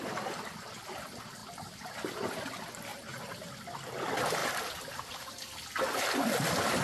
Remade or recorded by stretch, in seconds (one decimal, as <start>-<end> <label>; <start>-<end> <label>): 0.0-2.9 recorded; 2.9-3.5 remade; 3.5-4.4 recorded; 4.4-5.3 remade; 5.3-6.8 recorded